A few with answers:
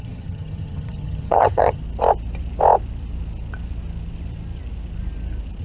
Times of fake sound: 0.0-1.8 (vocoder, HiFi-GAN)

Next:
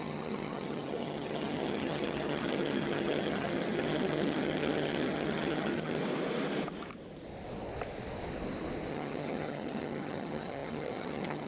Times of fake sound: 0.0-6.0 (vocoder, HiFi-GAN); 8.9-11.5

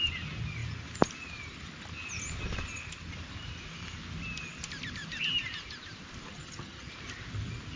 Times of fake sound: 6.3-6.9 (vocoder, HiFi-GAN)

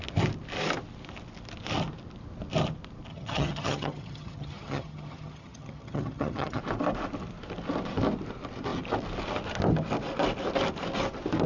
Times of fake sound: 3.1-6.6 (vocoder, HiFi-GAN)

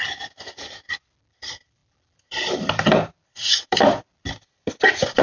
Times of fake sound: none

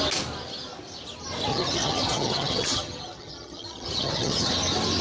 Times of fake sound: 1.5-4.5 (vocoder, HiFi-GAN)

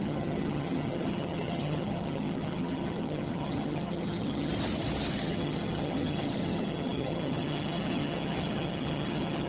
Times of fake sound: 0.0-4.5 (vocoder, HiFi-GAN); 5.1-9.5